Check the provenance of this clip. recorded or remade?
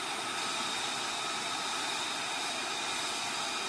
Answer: recorded